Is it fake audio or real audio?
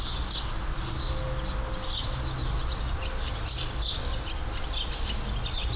real